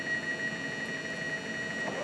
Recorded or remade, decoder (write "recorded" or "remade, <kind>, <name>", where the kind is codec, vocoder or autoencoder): recorded